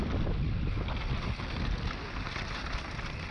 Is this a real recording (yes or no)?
yes